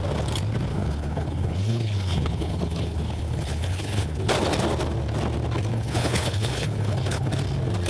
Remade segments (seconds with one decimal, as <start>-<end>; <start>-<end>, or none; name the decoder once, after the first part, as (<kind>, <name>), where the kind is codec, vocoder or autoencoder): 0.7-4.3 (codec, HILCodec); 5.7-7.3